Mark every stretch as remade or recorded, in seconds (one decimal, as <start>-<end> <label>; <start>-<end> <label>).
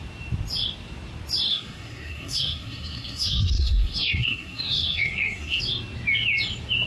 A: 0.0-1.5 recorded; 1.5-5.6 remade; 5.6-6.9 recorded